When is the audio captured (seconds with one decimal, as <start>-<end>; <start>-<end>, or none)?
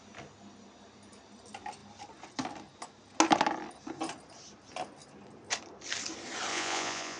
0.0-6.5